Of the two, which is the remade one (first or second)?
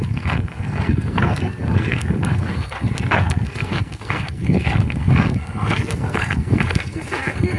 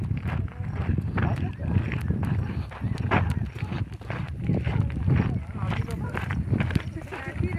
first